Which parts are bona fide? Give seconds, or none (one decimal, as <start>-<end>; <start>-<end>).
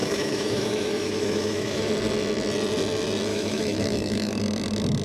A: 1.9-3.3; 4.4-5.0